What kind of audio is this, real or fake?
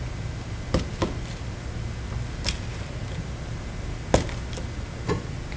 real